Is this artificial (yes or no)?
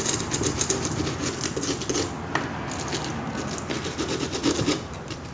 no